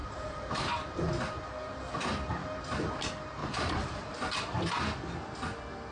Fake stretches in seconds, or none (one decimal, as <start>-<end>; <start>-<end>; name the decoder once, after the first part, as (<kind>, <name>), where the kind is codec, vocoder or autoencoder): 0.0-1.1 (vocoder, BigVGAN v2); 2.4-3.0; 3.4-4.8